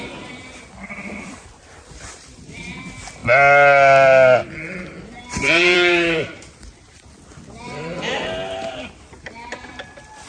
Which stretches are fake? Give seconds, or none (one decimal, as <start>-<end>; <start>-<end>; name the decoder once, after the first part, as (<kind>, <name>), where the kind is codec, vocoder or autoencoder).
0.0-3.2 (vocoder, BigVGAN v2); 4.8-10.3